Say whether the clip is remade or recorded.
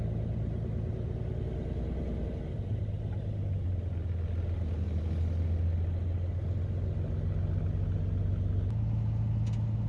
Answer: recorded